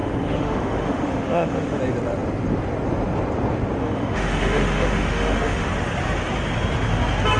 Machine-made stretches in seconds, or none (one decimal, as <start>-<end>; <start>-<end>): 0.0-1.8; 3.8-5.7